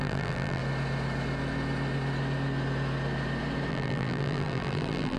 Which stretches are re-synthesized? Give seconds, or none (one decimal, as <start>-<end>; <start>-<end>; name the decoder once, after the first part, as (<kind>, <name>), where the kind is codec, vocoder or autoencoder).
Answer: 0.0-0.6 (vocoder, BigVGAN v2); 3.7-5.2